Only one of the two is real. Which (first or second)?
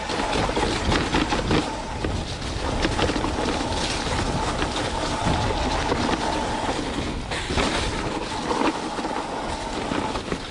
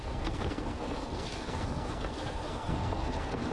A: first